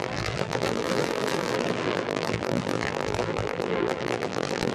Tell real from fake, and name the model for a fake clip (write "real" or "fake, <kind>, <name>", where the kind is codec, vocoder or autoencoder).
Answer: fake, vocoder, BigVGAN v2